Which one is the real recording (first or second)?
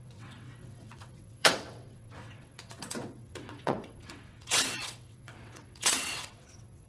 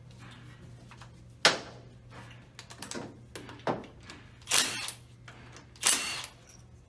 second